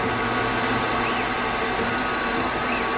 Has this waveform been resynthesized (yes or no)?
no